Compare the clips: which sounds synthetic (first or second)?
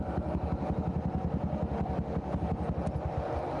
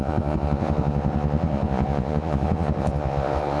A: second